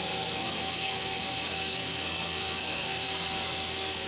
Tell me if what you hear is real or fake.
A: fake